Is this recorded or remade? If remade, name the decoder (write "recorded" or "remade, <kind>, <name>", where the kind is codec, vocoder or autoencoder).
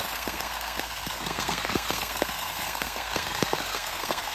remade, codec, SNAC